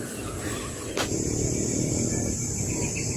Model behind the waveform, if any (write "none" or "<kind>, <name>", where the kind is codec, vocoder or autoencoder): none